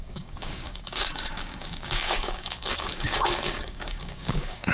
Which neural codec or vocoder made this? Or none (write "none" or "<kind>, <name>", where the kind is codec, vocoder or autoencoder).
codec, DAC